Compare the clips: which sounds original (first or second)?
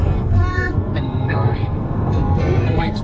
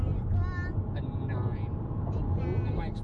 second